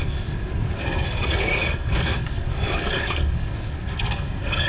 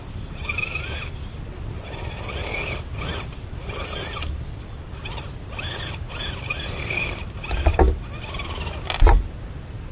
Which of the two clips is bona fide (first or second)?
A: second